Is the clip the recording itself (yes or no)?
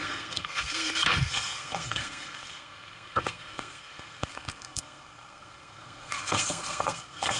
no